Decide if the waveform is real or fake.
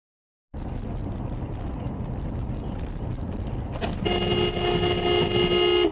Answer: real